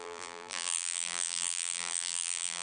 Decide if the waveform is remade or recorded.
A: remade